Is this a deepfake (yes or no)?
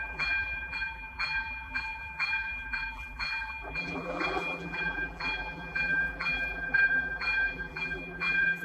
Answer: yes